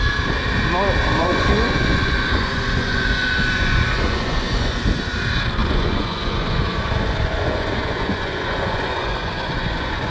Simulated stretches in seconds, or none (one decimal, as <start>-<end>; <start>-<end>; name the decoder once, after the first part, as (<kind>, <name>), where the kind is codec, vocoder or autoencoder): 1.2-4.8 (vocoder, Vocos); 5.6-10.1